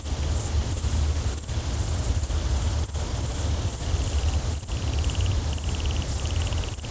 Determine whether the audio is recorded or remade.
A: recorded